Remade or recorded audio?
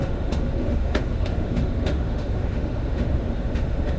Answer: remade